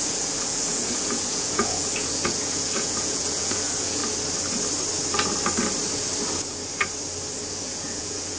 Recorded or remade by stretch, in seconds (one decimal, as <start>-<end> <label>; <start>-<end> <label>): 0.0-4.0 remade; 4.0-7.4 recorded; 7.4-8.4 remade